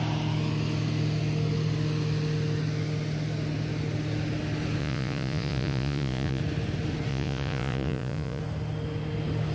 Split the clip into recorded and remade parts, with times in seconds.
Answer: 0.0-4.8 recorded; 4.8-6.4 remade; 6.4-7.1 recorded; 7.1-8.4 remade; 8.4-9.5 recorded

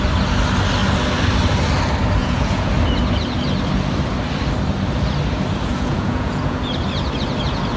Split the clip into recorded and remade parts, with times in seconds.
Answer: 0.0-2.2 recorded; 2.2-2.7 remade; 2.7-5.7 recorded; 5.7-6.6 remade; 6.6-7.8 recorded

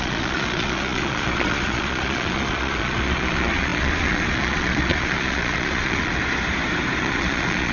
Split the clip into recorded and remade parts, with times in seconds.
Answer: 0.0-6.2 remade; 6.2-7.0 recorded; 7.0-7.7 remade